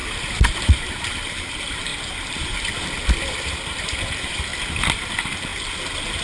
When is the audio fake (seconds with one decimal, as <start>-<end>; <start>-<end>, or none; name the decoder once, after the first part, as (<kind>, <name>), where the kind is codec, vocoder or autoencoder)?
0.0-1.9 (vocoder, BigVGAN v2); 3.3-4.5; 5.1-5.5